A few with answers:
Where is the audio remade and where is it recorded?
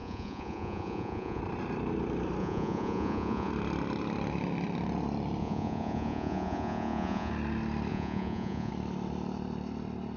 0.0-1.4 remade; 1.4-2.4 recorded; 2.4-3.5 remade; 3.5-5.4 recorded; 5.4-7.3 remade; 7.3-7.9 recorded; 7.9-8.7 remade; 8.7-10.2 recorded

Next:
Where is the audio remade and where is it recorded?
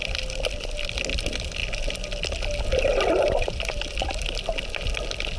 0.0-5.4 recorded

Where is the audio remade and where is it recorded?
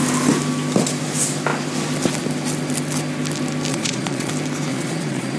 0.0-3.7 recorded; 3.7-4.3 remade; 4.3-4.7 recorded; 4.7-5.4 remade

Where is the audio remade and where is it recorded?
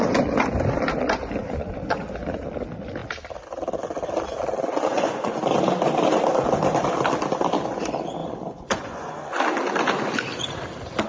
0.0-1.4 recorded; 1.4-2.0 remade; 2.0-4.9 recorded; 4.9-5.4 remade; 5.4-8.2 recorded; 8.2-9.4 remade; 9.4-11.1 recorded